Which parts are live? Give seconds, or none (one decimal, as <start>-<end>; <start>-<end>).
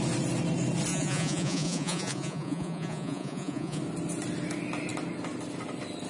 0.0-0.9; 3.8-6.1